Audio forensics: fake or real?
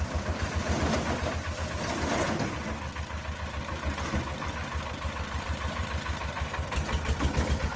fake